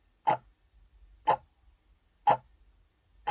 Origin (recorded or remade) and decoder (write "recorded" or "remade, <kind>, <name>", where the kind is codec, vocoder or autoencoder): recorded